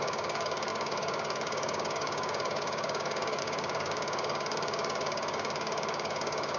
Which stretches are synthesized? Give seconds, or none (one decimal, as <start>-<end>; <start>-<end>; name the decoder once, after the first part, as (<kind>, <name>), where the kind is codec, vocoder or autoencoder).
0.0-6.6 (codec, DAC)